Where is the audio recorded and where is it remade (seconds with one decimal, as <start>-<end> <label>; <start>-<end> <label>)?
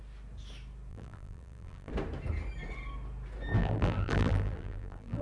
0.0-0.9 recorded; 0.9-1.9 remade; 1.9-3.6 recorded; 3.6-5.2 remade